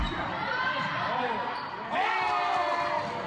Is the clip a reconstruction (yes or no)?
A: no